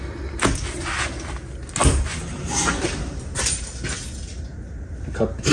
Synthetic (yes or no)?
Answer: no